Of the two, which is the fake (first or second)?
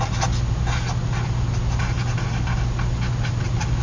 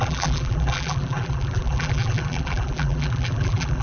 second